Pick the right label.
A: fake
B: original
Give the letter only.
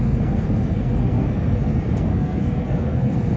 A